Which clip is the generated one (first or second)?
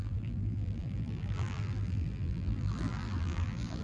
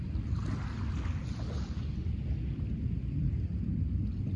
first